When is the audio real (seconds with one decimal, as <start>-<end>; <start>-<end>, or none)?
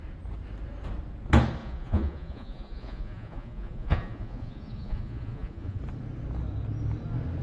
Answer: 0.0-1.6; 5.8-7.4